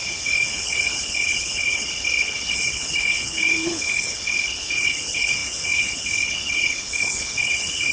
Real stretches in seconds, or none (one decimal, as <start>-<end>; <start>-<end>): none

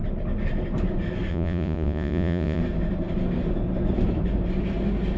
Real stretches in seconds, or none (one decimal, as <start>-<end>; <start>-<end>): 0.0-1.3; 2.6-5.2

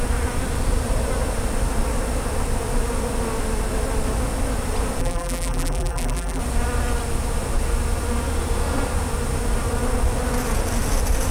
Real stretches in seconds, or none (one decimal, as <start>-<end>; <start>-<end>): 0.0-5.0; 6.4-11.3

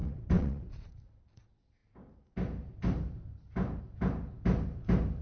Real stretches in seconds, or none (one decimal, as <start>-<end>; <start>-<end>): 0.9-5.2

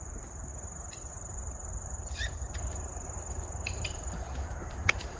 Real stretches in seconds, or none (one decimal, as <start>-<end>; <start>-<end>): 0.5-1.1

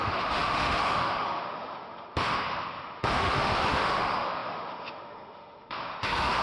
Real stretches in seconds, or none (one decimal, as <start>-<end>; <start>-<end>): none